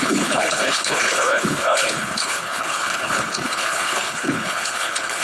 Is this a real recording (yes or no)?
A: no